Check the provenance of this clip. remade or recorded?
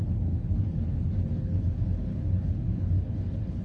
remade